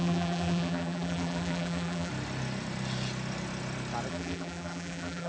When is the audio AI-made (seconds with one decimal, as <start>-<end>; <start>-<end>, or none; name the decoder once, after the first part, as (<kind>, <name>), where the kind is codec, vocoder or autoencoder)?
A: 0.0-2.1 (vocoder, BigVGAN v2); 4.1-5.3